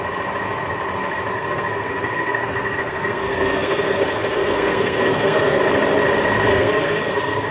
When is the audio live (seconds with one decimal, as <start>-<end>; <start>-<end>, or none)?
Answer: 0.0-1.3; 5.6-6.5